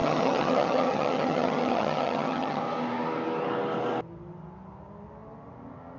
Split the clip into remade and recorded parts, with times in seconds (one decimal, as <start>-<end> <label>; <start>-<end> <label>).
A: 0.0-2.6 remade; 2.6-6.0 recorded